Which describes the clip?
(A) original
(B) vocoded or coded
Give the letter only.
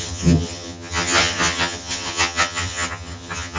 B